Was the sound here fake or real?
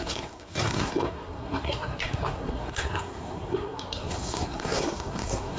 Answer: fake